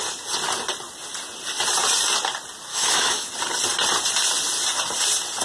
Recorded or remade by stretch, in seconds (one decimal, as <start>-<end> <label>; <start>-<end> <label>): 0.0-2.7 recorded; 2.7-3.3 remade; 3.3-5.4 recorded